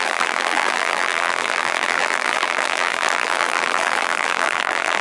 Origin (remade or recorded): remade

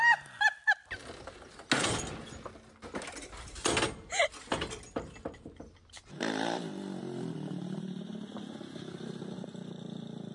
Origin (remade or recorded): recorded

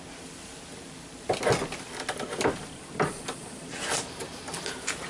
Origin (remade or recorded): recorded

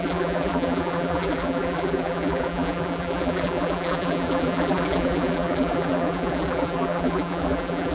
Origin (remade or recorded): remade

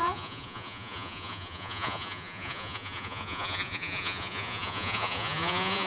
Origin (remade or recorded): remade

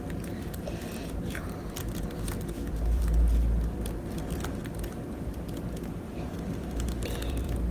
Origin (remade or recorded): remade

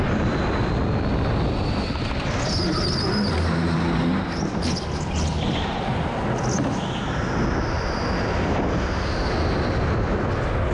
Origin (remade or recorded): recorded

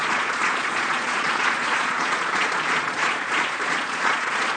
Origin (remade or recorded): remade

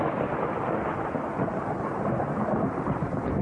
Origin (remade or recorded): recorded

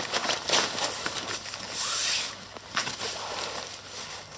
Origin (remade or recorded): recorded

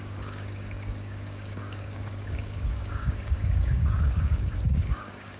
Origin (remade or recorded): remade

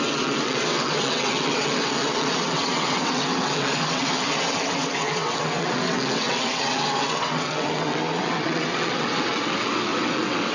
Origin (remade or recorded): remade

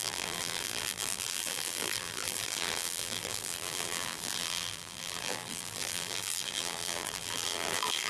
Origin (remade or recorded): remade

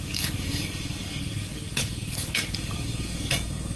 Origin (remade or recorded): remade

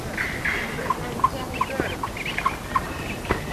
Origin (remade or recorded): recorded